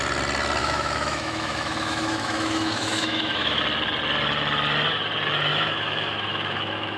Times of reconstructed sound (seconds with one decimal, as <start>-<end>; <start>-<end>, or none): 0.6-3.6; 5.5-7.0